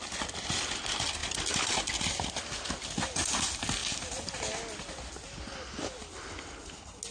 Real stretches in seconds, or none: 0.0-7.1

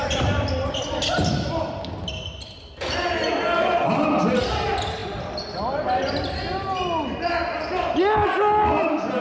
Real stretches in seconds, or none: 0.0-9.2

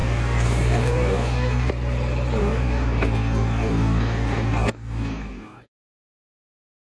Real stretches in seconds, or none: 1.7-2.4; 6.4-7.0